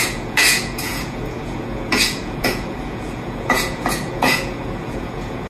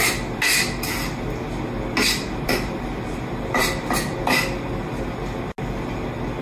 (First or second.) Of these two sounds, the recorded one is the second